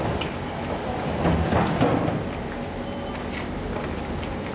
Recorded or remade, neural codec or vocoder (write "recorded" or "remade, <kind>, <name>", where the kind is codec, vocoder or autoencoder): recorded